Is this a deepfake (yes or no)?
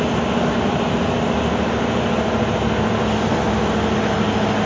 no